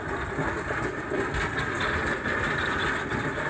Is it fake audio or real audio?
real